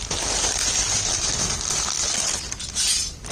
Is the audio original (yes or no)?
yes